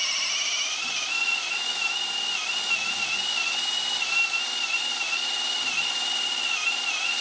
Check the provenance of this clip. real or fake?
real